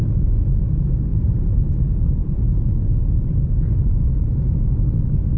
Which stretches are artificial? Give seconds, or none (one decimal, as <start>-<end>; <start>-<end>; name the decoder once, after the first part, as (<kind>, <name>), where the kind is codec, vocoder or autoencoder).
1.1-2.7 (vocoder, BigVGAN v2)